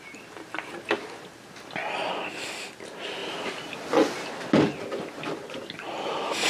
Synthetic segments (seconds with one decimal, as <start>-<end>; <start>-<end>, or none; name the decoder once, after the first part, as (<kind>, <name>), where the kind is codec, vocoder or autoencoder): none